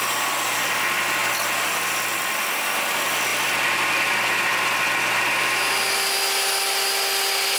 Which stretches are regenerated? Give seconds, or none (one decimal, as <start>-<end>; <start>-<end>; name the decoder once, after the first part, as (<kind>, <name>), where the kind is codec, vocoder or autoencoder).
none